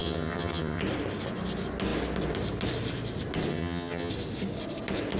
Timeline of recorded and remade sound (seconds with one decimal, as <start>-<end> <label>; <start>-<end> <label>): 0.0-0.8 remade; 0.8-3.5 recorded; 3.5-4.1 remade; 4.1-5.2 recorded